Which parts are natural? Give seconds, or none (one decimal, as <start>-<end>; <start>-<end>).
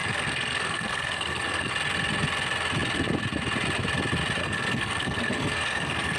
1.7-4.4